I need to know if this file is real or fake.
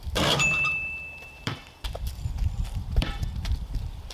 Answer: fake